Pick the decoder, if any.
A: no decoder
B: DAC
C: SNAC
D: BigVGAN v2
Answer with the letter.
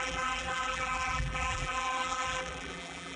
D